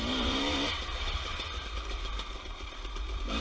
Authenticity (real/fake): fake